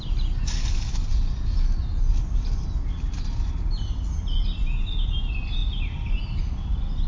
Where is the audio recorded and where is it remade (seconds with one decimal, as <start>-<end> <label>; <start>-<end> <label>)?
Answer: 0.0-7.1 recorded